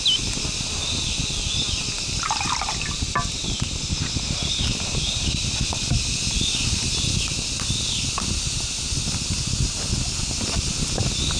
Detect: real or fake real